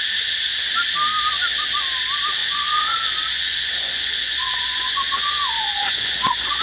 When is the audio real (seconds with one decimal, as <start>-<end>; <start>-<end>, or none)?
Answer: 0.0-2.4